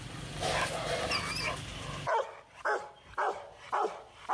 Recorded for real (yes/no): yes